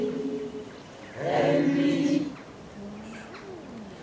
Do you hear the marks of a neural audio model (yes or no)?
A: no